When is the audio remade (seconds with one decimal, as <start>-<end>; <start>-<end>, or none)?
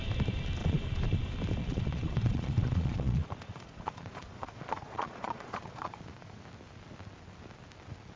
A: 0.6-1.2; 1.6-6.4